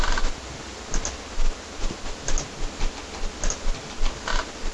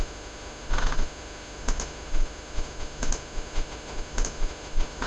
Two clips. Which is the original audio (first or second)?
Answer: first